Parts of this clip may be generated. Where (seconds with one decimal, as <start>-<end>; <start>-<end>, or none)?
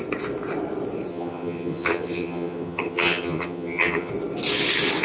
1.1-4.1